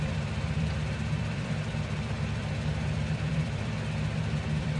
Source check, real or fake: fake